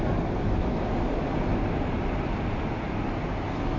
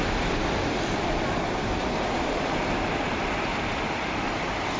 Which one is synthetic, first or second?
second